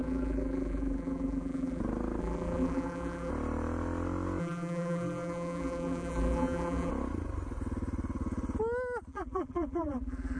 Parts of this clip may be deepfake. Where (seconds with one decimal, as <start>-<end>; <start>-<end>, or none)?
0.0-1.8; 2.2-3.3; 4.4-6.9; 9.1-10.4